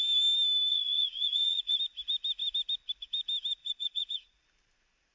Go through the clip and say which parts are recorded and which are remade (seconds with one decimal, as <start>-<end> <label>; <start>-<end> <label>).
0.0-0.7 recorded; 0.7-1.8 remade; 1.8-3.6 recorded; 3.6-4.4 remade; 4.4-5.1 recorded